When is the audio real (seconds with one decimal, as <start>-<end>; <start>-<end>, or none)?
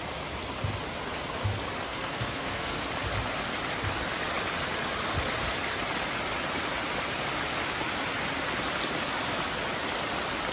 0.0-1.9; 2.8-10.5